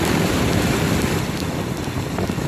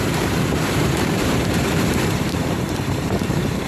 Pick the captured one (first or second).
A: first